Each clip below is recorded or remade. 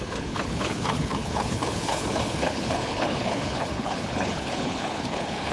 remade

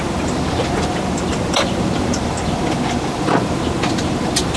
remade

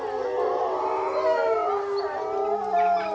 recorded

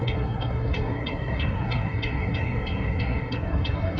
remade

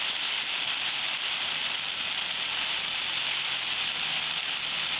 recorded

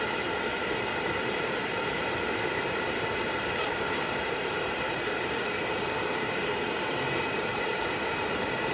remade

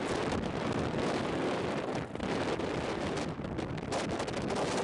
recorded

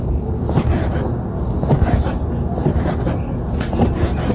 recorded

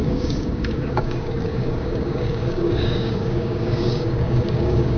remade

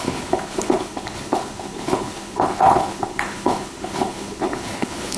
remade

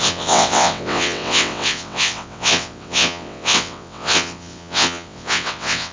remade